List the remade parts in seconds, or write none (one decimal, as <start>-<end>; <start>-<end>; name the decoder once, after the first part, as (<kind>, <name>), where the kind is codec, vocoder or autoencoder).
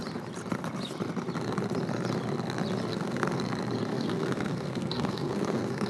2.9-3.4 (codec, SNAC); 3.9-5.9